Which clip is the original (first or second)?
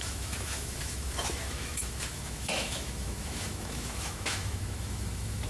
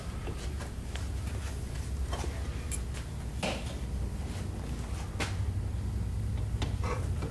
second